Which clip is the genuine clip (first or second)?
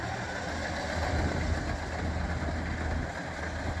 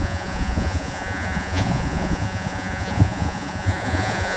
first